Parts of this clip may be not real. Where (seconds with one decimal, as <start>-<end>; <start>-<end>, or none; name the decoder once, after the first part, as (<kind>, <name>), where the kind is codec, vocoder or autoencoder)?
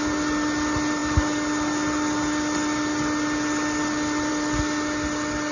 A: none